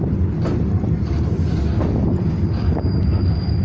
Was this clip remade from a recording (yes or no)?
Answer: no